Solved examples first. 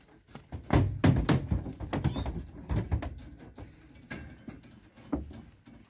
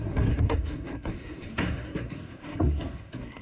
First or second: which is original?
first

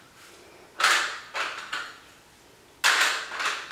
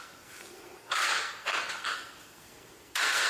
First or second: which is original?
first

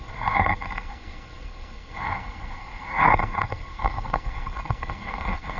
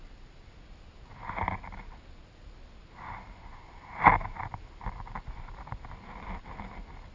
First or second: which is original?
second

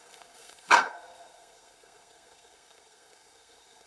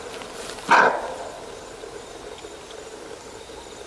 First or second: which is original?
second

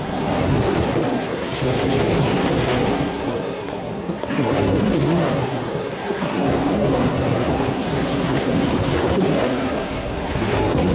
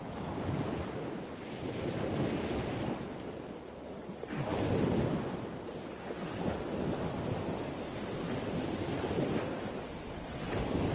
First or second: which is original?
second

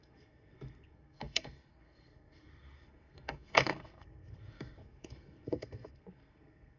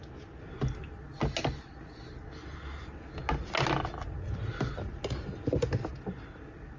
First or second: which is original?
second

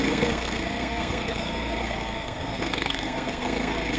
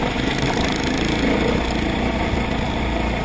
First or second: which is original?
second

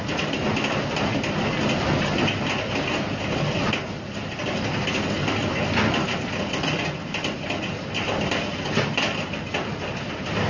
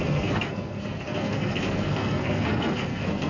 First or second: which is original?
first